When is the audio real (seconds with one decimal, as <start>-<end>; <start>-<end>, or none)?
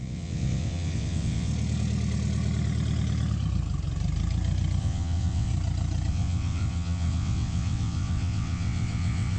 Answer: 1.5-4.8; 5.5-6.1